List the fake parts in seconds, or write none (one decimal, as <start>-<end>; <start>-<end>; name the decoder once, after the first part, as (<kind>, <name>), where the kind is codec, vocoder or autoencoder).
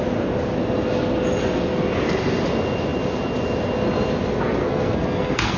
4.6-5.6 (codec, SNAC)